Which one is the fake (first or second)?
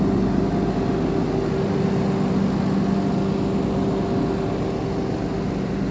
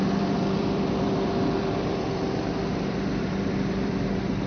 second